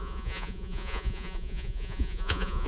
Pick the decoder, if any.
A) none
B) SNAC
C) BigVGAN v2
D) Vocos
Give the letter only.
D